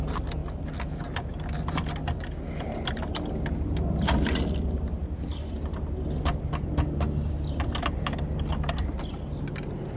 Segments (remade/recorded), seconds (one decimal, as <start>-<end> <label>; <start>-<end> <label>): 0.0-10.0 recorded